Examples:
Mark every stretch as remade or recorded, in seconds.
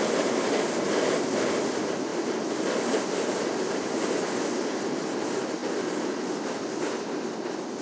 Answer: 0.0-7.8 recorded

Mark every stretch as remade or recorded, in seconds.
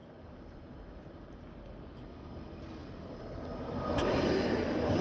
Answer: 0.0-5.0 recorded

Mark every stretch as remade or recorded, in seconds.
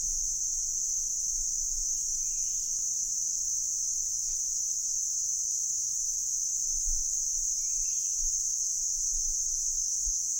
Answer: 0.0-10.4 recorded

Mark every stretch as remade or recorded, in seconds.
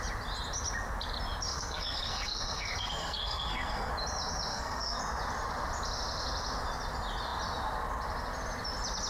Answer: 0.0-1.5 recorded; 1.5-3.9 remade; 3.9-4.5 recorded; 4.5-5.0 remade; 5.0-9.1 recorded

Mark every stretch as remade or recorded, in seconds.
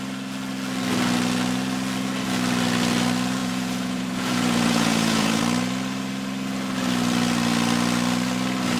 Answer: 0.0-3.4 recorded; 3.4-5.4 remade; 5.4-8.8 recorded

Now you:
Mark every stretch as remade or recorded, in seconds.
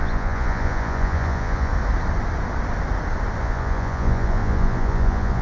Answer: 0.0-1.7 remade; 1.7-3.4 recorded; 3.4-5.4 remade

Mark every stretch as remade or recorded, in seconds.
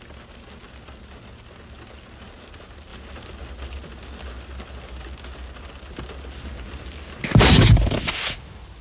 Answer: 0.0-8.8 recorded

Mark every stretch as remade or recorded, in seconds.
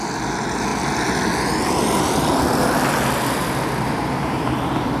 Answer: 0.0-5.0 recorded